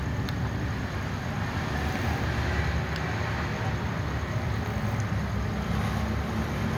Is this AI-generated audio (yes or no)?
no